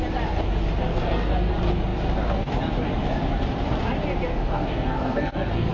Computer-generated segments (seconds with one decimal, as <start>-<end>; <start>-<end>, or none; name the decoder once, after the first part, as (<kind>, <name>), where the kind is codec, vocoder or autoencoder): 0.9-1.5 (codec, SNAC); 4.3-5.7